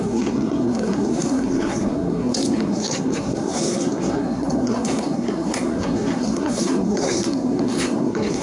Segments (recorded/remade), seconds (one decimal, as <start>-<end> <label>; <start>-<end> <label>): 0.0-8.4 remade